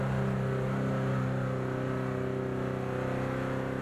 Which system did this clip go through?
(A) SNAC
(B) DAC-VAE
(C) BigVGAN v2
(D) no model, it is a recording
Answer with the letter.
D